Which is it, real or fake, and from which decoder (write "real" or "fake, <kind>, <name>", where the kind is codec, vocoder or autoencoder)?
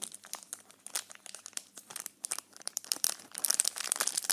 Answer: fake, vocoder, BigVGAN v2